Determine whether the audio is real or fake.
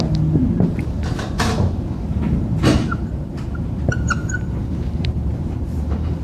fake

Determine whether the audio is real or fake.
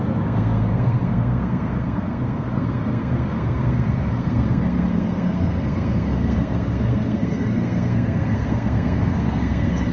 fake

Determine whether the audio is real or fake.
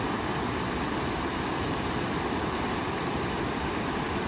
real